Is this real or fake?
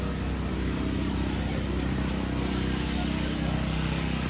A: real